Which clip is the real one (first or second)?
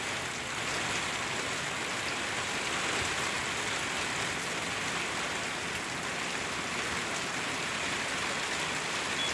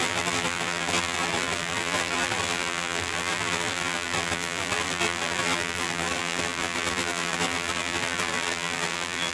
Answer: first